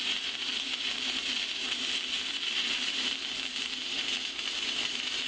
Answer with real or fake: fake